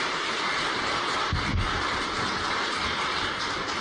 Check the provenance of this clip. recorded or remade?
remade